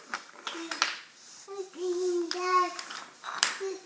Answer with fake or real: fake